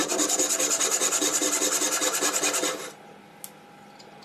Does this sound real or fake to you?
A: real